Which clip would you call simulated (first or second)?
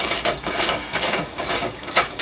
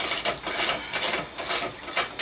first